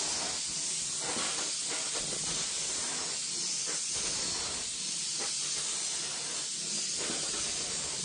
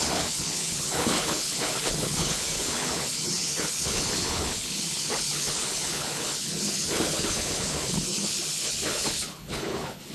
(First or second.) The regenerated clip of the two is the second